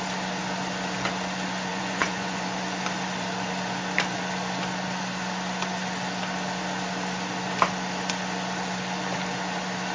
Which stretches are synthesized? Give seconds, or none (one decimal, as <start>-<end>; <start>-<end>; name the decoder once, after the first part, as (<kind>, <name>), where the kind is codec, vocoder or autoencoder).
1.7-2.4 (vocoder, Vocos)